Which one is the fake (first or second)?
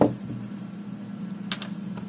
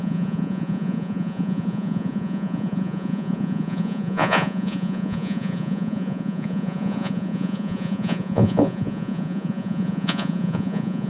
second